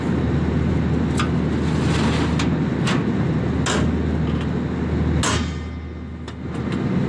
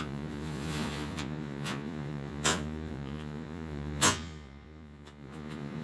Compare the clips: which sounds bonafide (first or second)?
first